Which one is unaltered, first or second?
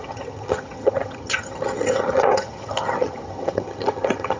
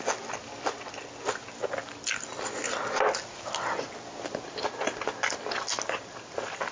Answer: second